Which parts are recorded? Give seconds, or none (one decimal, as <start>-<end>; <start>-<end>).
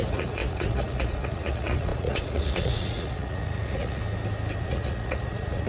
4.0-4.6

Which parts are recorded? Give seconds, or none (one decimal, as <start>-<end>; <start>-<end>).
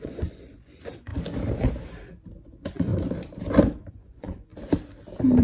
1.1-2.5; 2.9-3.9; 4.5-5.4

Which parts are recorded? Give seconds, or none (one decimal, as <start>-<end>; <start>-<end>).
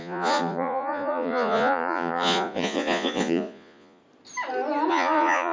4.0-4.9